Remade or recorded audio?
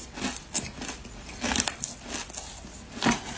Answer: recorded